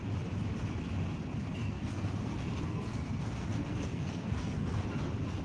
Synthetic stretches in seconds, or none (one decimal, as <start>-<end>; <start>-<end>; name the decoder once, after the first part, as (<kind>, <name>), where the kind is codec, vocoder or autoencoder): 1.6-4.8 (codec, SNAC)